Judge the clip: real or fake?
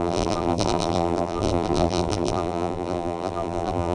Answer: fake